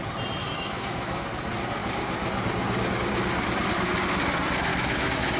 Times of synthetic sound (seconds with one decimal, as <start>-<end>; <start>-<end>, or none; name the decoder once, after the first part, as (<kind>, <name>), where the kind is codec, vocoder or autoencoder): 0.4-1.2 (autoencoder, DAC-VAE); 4.7-5.4

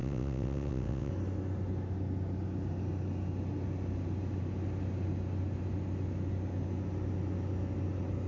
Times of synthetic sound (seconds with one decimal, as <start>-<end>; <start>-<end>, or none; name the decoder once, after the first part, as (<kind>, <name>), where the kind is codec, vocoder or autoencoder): 0.0-1.1 (vocoder, WaveNeXt)